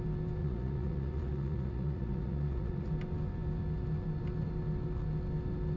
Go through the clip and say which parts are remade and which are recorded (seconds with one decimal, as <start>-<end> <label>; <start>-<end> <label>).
0.0-0.4 recorded; 0.4-2.9 remade; 2.9-5.8 recorded